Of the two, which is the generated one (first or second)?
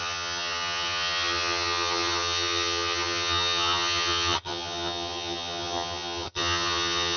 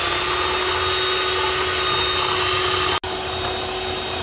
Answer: first